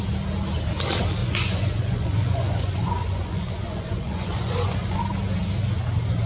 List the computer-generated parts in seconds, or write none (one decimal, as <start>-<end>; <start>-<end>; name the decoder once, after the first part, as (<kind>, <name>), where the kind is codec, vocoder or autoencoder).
1.2-5.0 (vocoder, Vocos)